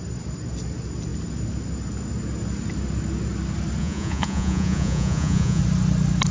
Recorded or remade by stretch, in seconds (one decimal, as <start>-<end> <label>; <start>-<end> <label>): 0.0-3.8 recorded; 3.8-5.6 remade; 5.6-6.3 recorded